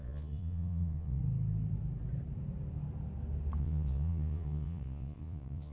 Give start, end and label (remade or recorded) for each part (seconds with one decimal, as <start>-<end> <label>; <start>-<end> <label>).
0.0-1.2 remade; 1.2-3.6 recorded; 3.6-5.7 remade